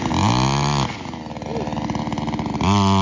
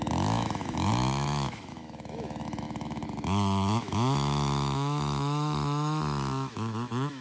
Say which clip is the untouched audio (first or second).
first